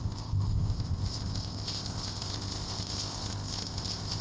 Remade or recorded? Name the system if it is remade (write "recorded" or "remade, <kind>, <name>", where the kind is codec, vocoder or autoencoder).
remade, codec, ZipCodec